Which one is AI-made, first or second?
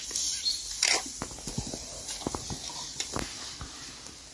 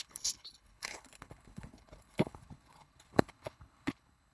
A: second